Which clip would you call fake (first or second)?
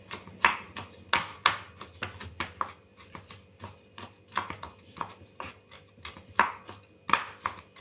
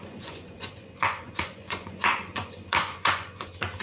second